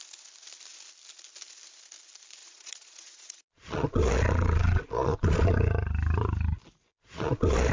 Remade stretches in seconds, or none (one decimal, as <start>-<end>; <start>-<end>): 2.4-5.7; 6.9-7.7